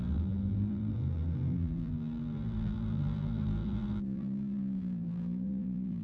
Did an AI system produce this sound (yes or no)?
yes